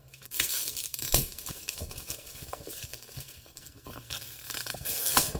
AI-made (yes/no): yes